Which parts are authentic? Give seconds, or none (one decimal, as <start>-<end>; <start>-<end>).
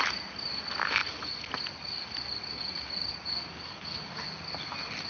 0.0-5.1